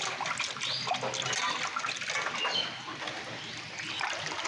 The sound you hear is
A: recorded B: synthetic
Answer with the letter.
A